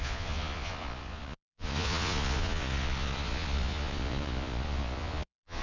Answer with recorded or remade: remade